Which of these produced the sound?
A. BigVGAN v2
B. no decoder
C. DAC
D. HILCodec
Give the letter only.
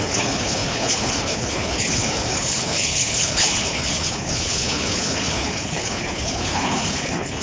D